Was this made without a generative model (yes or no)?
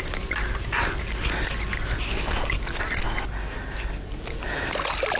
yes